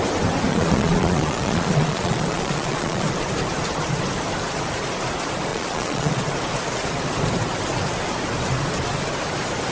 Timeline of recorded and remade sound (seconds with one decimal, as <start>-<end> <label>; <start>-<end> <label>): 0.0-0.5 recorded; 0.5-3.1 remade; 3.1-5.5 recorded; 5.5-6.2 remade; 6.2-9.7 recorded